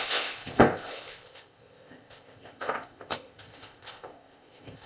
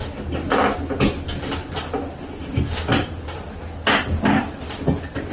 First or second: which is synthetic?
first